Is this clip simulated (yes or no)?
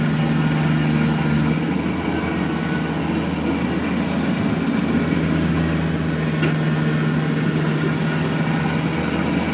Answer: no